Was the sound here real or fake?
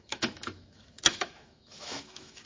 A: fake